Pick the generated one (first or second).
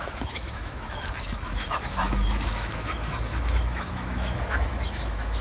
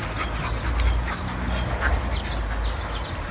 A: first